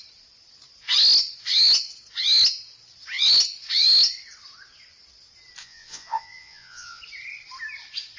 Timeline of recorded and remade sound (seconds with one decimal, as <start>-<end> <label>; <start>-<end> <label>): 0.0-5.6 recorded; 5.6-7.0 remade; 7.0-8.2 recorded